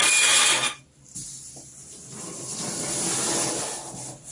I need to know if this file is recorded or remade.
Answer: remade